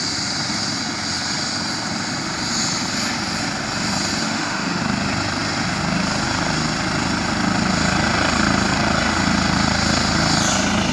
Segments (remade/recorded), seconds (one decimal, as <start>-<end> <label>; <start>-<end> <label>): 0.0-4.2 recorded; 4.2-4.8 remade; 4.8-10.9 recorded